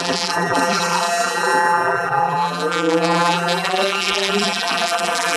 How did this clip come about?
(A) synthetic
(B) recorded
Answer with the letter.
A